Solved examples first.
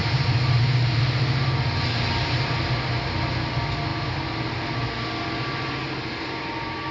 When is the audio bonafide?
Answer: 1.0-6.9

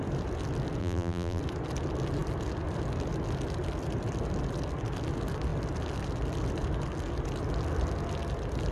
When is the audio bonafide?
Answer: 0.0-0.8; 1.4-8.7

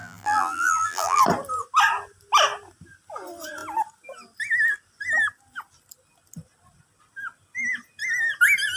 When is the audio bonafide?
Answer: 1.2-8.8

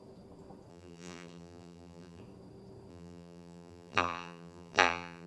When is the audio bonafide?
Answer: 0.0-0.7; 2.2-2.9

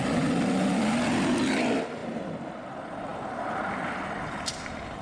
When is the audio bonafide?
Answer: 3.1-3.9

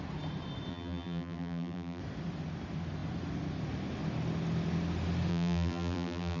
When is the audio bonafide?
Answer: 0.0-0.7; 2.0-5.3